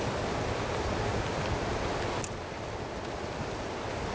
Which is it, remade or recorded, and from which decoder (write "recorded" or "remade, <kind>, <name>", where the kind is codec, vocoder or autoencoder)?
recorded